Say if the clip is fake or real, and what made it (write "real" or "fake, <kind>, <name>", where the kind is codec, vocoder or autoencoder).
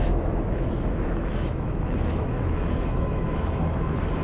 fake, autoencoder, DAC-VAE